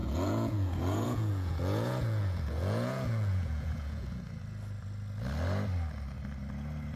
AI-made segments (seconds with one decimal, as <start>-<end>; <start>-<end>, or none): 0.0-4.2